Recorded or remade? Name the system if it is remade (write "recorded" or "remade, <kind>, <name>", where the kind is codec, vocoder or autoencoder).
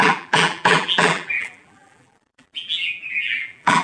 remade, vocoder, BigVGAN v2